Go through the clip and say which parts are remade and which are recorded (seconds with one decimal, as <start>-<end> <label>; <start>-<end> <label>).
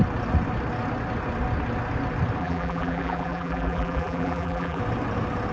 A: 0.0-2.4 recorded; 2.4-4.8 remade; 4.8-5.5 recorded